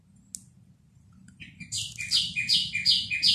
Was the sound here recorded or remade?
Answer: recorded